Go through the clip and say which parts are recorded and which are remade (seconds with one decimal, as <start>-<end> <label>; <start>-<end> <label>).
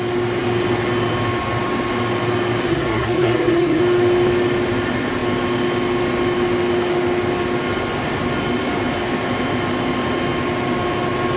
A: 0.0-2.6 recorded; 2.6-3.8 remade; 3.8-11.4 recorded